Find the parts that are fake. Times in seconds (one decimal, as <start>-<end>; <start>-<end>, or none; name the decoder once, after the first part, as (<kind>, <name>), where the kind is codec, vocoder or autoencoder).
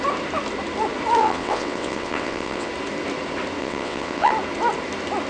1.2-2.7 (vocoder, WaveNeXt); 3.6-4.3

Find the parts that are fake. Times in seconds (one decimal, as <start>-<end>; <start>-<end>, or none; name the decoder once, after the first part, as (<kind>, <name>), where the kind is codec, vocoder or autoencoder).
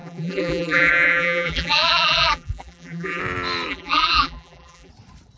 0.0-3.2 (vocoder, BigVGAN v2); 3.7-4.9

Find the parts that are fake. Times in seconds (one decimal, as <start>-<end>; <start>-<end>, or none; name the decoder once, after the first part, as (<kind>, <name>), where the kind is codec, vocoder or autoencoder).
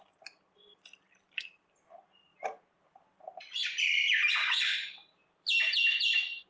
2.3-6.5 (vocoder, BigVGAN v2)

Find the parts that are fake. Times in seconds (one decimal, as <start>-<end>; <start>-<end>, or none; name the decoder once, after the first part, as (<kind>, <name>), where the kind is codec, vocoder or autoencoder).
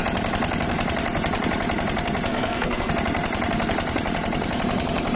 2.3-2.9 (codec, SNAC)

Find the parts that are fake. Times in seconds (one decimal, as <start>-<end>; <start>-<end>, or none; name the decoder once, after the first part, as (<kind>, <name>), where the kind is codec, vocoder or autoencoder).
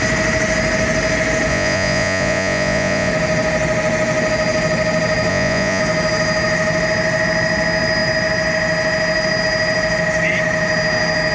1.5-3.1 (vocoder, Vocos); 5.3-5.8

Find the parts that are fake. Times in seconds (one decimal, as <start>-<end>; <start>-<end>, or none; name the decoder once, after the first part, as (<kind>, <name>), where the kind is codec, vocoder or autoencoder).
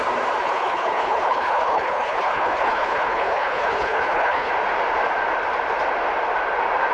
0.4-4.5 (codec, HILCodec)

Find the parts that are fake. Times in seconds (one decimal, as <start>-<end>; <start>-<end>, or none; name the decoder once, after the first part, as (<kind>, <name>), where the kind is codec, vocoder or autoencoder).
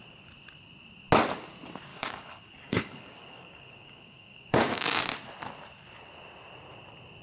1.9-5.0 (codec, DAC)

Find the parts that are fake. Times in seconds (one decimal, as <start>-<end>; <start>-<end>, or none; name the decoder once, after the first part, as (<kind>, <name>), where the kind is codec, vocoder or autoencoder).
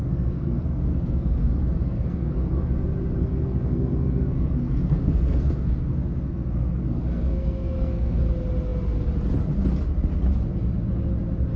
0.0-2.7 (codec, SNAC); 3.2-8.2